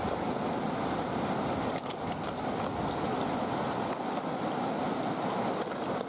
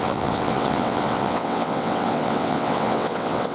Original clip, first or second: first